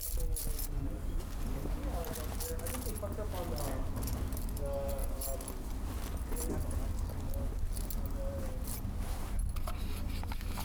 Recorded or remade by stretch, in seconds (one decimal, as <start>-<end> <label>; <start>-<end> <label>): 0.0-10.6 recorded